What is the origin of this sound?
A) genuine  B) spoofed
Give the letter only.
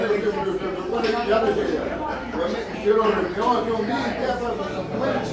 B